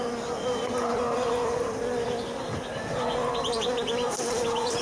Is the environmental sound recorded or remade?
recorded